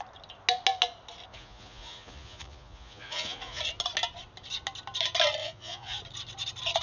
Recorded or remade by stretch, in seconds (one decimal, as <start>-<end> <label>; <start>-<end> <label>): 0.0-1.3 recorded; 1.3-3.6 remade; 3.6-5.4 recorded; 5.4-6.0 remade; 6.0-6.8 recorded